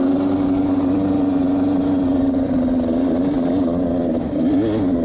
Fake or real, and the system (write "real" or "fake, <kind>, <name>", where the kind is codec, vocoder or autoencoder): real